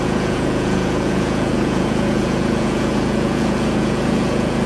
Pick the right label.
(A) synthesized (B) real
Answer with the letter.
A